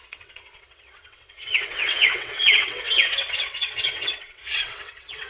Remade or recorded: remade